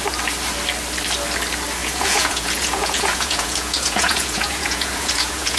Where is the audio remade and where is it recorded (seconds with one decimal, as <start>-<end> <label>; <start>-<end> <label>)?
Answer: 0.0-1.8 recorded; 1.8-5.6 remade